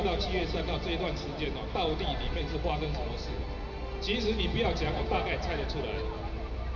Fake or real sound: real